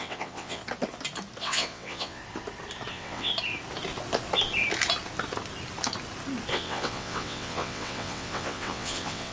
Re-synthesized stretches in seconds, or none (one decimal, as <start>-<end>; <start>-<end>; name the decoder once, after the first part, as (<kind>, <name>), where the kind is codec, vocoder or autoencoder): 0.0-0.6 (vocoder, WaveNeXt); 1.4-2.2; 2.9-3.3; 6.5-9.3